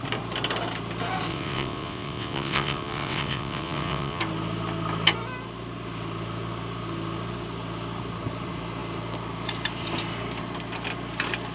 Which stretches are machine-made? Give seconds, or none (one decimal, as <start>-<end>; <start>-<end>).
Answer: 1.3-4.2